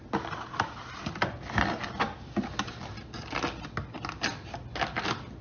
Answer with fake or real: real